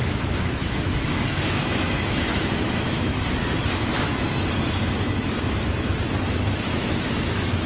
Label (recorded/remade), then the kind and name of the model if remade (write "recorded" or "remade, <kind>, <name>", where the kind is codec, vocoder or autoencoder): remade, autoencoder, DAC-VAE